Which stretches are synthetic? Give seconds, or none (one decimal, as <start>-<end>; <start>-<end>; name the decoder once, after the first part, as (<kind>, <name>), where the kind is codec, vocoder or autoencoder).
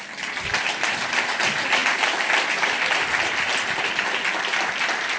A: 0.0-1.8 (vocoder, BigVGAN v2); 4.8-5.2